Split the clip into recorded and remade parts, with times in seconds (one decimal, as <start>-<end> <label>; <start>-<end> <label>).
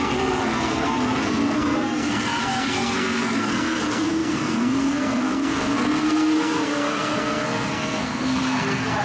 0.0-9.0 remade